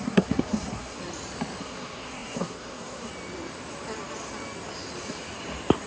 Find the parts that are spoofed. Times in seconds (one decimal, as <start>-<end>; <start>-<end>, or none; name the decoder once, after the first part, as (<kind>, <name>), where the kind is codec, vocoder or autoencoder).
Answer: 0.0-1.0 (codec, SNAC); 1.6-3.1